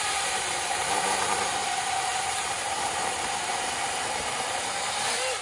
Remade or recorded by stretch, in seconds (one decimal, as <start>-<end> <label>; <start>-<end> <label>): 0.0-5.4 remade